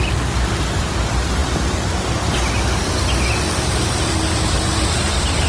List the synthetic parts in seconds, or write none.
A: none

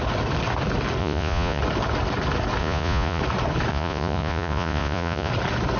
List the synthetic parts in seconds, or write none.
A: 1.0-1.6 (vocoder, Vocos); 2.6-3.2; 3.7-5.3